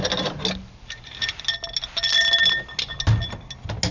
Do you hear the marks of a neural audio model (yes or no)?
no